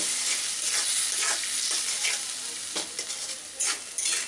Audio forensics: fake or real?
real